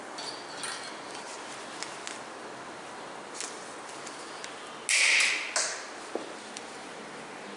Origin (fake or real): real